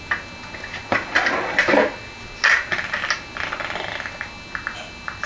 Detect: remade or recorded recorded